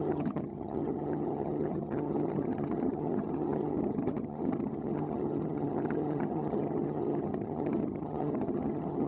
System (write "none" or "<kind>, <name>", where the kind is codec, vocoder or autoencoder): vocoder, HiFi-GAN